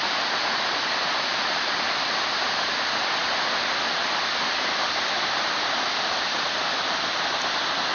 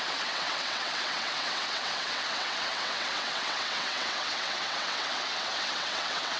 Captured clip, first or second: first